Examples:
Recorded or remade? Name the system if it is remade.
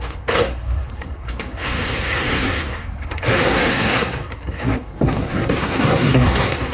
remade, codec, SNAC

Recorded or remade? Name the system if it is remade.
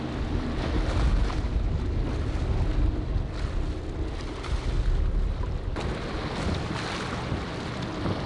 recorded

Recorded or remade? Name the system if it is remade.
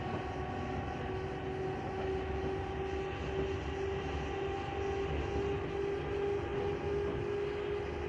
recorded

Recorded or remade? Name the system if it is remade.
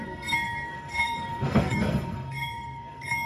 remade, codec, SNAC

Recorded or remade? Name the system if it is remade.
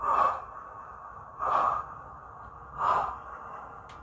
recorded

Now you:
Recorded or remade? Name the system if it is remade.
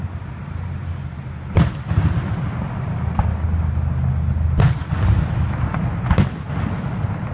recorded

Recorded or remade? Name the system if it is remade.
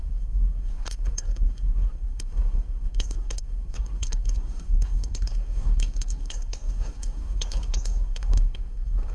remade, codec, SNAC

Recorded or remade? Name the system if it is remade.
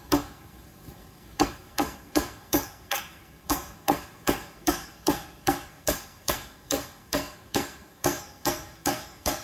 remade, codec, SNAC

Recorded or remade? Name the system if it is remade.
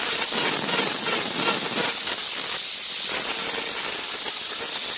recorded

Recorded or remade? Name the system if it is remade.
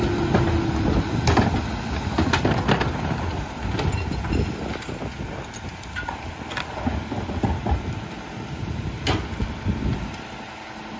recorded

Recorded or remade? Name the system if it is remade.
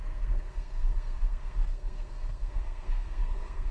remade, codec, SNAC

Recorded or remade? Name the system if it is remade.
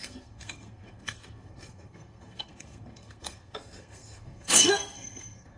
remade, codec, SNAC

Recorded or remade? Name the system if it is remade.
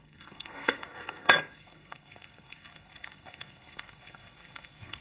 remade, codec, SNAC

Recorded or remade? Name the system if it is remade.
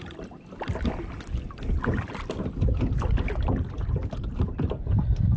recorded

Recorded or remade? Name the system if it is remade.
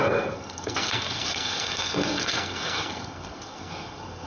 remade, codec, SNAC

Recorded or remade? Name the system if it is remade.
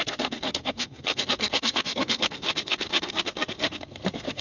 remade, codec, SNAC